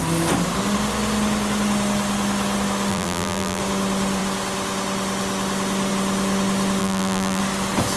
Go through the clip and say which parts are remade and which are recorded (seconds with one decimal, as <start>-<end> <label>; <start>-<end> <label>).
0.0-2.9 recorded; 2.9-3.6 remade; 3.6-6.8 recorded; 6.8-7.4 remade; 7.4-8.0 recorded